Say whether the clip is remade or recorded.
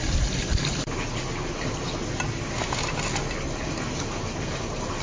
recorded